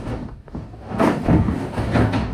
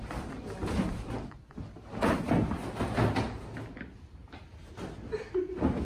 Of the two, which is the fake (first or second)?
first